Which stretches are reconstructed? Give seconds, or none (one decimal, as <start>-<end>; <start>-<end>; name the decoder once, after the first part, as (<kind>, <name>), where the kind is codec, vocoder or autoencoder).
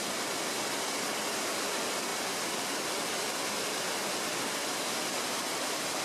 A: none